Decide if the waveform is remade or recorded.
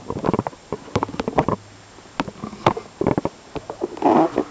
recorded